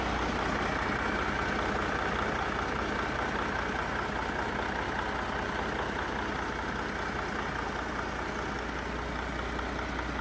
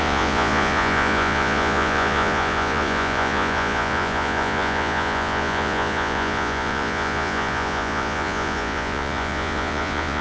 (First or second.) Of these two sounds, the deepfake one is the second